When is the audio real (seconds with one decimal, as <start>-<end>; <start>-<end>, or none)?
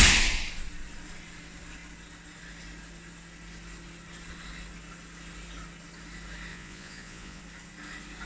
0.0-6.5; 7.4-8.3